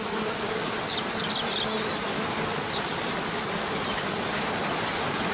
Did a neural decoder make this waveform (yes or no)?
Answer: no